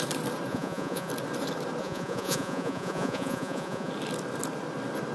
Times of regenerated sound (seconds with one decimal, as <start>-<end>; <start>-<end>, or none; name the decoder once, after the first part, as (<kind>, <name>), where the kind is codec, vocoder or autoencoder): 0.5-1.1 (vocoder, Vocos); 1.8-3.9

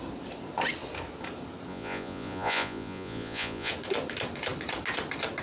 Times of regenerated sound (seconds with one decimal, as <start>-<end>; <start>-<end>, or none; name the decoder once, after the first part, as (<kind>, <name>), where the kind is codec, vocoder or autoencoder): 1.7-3.7 (vocoder, Vocos)

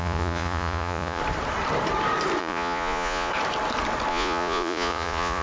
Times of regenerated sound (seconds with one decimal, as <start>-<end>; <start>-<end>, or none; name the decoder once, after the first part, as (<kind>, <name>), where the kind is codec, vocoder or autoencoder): 0.0-1.2 (vocoder, Vocos); 2.4-3.3; 4.1-5.4

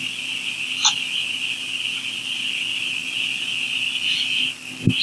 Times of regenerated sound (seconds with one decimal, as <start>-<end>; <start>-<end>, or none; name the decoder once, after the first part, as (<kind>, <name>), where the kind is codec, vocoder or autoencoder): none

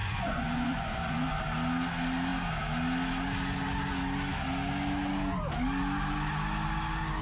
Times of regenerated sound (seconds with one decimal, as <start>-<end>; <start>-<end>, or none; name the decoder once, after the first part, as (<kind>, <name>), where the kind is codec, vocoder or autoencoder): 0.0-1.4 (vocoder, Vocos)